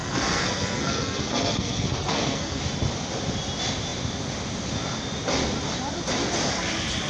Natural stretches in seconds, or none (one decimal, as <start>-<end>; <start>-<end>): 2.6-7.1